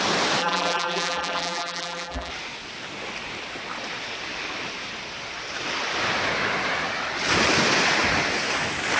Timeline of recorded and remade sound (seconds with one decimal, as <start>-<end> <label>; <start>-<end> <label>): 0.0-0.4 recorded; 0.4-2.3 remade; 2.3-9.0 recorded